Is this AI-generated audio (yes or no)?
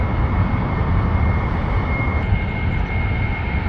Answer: no